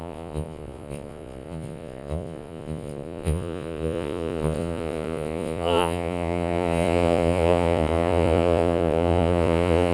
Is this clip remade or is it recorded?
remade